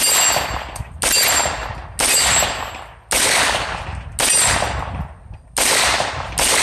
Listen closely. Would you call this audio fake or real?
real